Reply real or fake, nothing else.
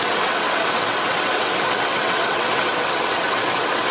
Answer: fake